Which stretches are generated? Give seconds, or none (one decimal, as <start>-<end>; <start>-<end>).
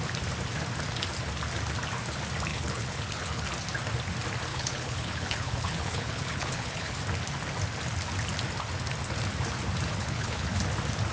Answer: 2.5-3.4; 4.5-7.0; 9.9-10.6